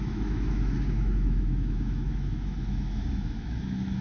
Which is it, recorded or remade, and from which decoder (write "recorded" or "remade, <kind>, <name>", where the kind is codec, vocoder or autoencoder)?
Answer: remade, autoencoder, DAC-VAE